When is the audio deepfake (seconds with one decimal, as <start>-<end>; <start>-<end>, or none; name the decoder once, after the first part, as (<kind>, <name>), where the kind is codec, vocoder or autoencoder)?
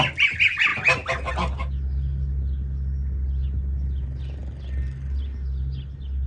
none